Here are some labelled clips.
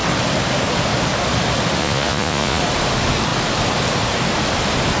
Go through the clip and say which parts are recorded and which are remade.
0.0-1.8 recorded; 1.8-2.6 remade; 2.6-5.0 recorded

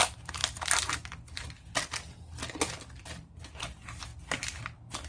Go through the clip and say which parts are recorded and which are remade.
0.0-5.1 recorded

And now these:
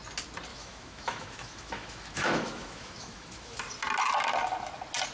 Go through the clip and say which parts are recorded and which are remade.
0.0-0.5 recorded; 0.5-3.6 remade; 3.6-5.1 recorded

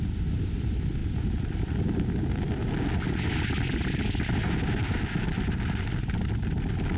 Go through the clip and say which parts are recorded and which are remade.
0.0-7.0 recorded

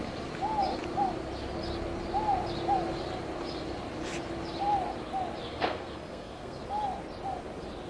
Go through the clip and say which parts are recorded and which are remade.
0.0-5.5 recorded; 5.5-6.6 remade; 6.6-7.9 recorded